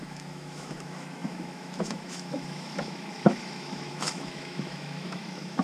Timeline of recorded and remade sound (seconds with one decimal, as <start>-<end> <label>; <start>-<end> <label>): 0.0-5.6 remade